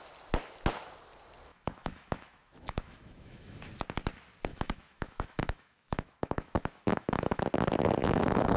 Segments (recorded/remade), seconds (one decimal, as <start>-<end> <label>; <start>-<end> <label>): 0.0-1.5 recorded; 1.5-3.6 remade; 3.6-4.5 recorded; 4.5-7.4 remade; 7.4-8.0 recorded; 8.0-8.6 remade